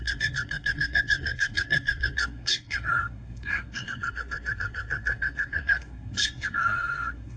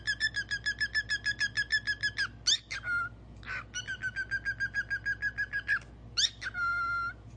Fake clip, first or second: first